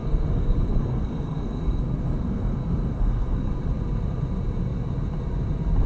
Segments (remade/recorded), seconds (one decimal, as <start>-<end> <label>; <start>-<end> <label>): 0.0-3.5 remade; 3.5-5.9 recorded